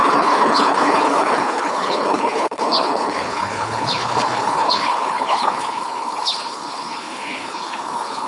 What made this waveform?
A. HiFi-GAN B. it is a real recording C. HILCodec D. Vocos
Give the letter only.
C